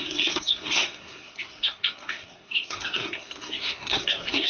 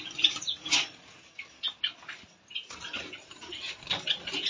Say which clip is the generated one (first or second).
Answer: first